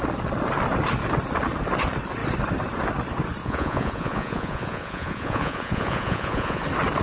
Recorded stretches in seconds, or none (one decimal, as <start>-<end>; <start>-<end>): 0.0-3.4; 6.6-7.0